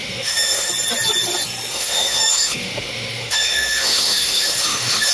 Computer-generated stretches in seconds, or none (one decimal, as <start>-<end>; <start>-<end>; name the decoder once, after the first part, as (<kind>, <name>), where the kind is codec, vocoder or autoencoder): 0.0-0.7 (autoencoder, DAC-VAE); 1.7-5.1